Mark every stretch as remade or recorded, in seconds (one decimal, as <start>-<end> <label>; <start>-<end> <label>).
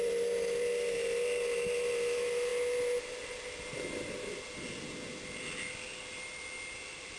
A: 0.0-7.2 recorded